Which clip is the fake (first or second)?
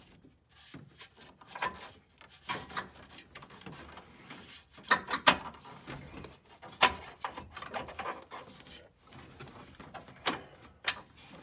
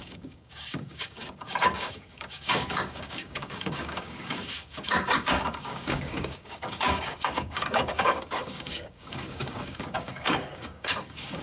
second